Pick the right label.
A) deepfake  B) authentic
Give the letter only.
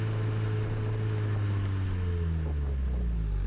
B